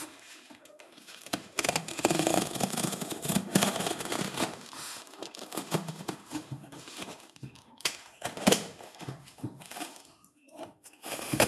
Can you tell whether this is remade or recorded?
remade